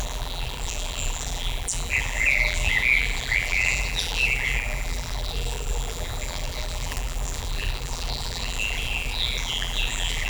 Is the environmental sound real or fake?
fake